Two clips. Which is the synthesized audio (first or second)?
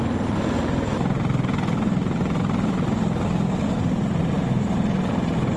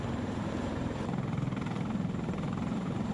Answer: second